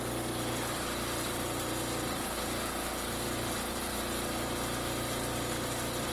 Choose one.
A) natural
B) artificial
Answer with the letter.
A